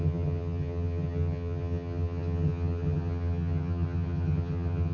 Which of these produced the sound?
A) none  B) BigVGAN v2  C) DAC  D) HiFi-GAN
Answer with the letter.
D